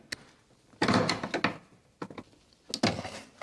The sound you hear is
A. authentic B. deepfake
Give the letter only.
A